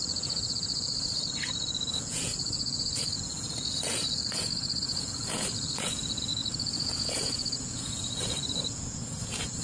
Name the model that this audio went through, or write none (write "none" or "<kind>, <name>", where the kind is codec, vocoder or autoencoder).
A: vocoder, Vocos